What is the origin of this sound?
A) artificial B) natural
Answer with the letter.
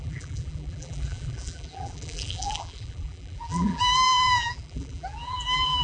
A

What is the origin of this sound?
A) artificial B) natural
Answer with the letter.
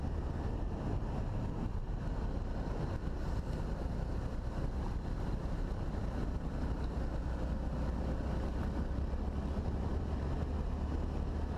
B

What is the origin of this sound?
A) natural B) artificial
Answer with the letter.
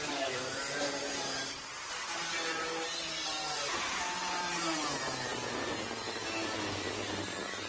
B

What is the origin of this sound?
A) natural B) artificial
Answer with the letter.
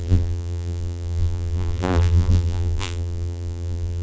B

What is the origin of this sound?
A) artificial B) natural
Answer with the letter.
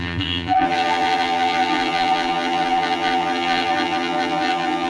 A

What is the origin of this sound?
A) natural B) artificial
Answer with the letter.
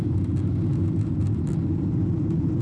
A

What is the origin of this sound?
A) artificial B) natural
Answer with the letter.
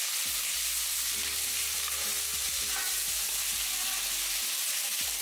B